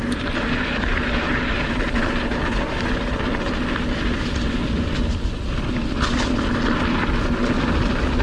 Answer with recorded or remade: recorded